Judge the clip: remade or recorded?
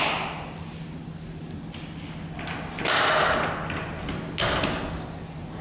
recorded